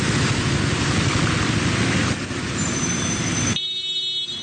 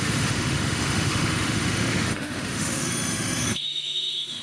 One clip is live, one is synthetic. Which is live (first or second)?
first